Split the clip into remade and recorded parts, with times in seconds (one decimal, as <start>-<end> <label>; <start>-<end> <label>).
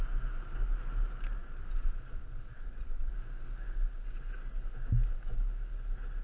0.0-1.4 recorded; 1.4-3.1 remade; 3.1-6.2 recorded